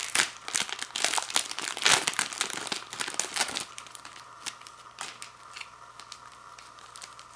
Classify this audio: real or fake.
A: real